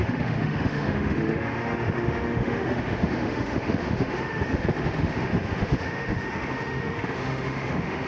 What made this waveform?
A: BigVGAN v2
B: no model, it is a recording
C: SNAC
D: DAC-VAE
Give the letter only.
D